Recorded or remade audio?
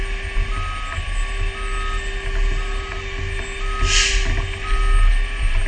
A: recorded